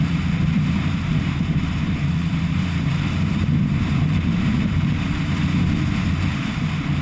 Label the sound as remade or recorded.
remade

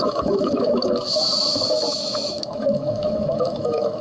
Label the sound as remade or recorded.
remade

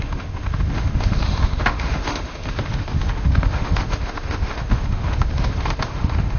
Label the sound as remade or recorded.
remade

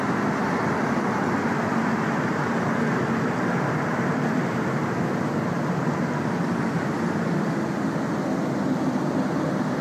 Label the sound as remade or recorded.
recorded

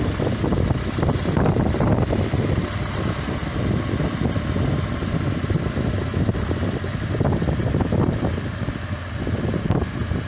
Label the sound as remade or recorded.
recorded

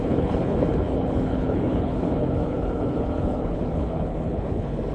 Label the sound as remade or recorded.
remade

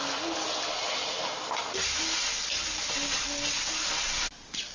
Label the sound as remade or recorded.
recorded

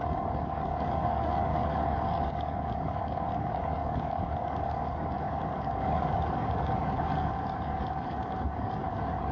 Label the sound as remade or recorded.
remade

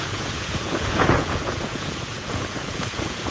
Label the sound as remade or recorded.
remade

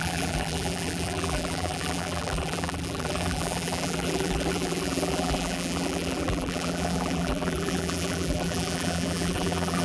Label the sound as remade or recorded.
remade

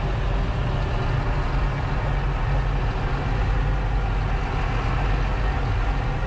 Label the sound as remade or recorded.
recorded